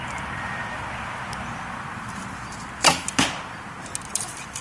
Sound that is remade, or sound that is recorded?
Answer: recorded